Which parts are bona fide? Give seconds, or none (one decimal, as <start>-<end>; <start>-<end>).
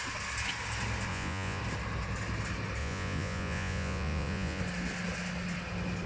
0.0-1.1; 1.6-2.8; 4.6-6.1